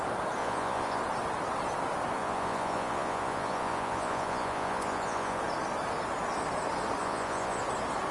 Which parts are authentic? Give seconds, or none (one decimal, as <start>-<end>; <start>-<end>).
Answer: 0.0-0.4; 1.0-2.2; 5.4-7.0; 7.6-8.1